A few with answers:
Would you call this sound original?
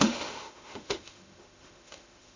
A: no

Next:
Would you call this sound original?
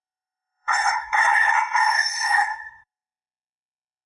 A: no